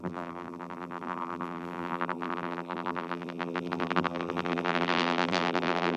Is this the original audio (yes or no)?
no